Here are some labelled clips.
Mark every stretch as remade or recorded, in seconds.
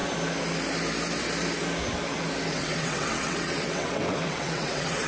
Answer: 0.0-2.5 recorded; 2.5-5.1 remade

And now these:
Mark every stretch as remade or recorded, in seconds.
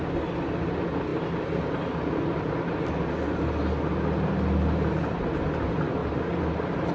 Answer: 0.0-1.1 recorded; 1.1-2.5 remade; 2.5-6.0 recorded; 6.0-6.9 remade